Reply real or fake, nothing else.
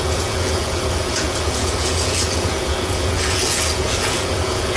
fake